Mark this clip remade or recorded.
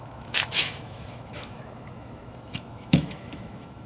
remade